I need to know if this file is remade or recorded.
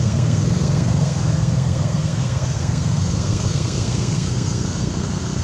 remade